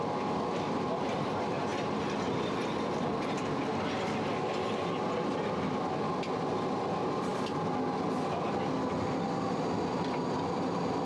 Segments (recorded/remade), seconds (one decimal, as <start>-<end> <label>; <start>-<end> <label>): 0.0-11.1 recorded